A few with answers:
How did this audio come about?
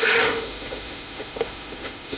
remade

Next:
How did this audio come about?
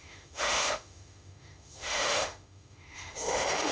remade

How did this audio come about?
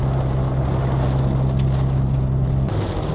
recorded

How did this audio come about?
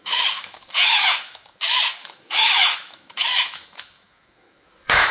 remade